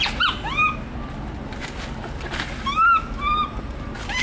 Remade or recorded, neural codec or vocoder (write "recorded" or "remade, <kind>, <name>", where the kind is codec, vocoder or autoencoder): recorded